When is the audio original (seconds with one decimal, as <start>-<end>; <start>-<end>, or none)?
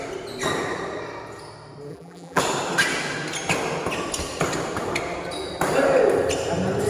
0.0-1.9; 2.4-6.9